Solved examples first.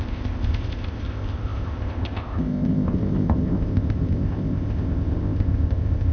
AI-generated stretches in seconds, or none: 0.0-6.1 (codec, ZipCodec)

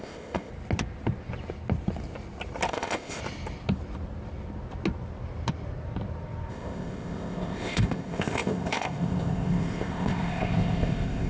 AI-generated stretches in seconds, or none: 0.0-0.5 (codec, ZipCodec); 2.7-3.2; 6.5-11.3